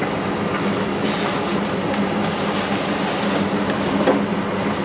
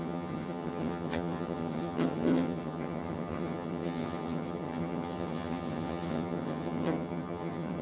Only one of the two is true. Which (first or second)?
first